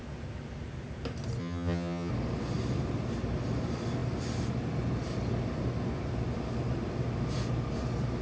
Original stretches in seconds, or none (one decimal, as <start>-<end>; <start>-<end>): 0.0-1.4; 2.1-8.2